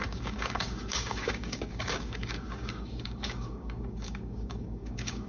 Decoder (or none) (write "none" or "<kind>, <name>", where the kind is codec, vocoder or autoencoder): codec, DAC